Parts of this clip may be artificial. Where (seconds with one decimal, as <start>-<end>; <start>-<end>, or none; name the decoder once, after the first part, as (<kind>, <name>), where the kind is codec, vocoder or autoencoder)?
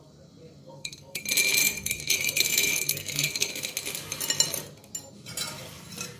0.6-1.2 (codec, SNAC); 1.6-3.5